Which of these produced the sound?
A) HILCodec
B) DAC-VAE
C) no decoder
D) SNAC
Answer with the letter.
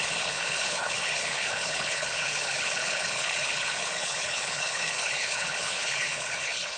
A